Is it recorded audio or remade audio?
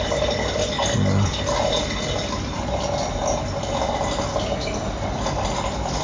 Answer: recorded